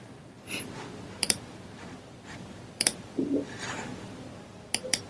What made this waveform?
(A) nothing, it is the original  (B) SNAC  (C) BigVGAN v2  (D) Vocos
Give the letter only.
C